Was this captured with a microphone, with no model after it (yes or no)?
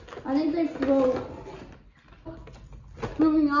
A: yes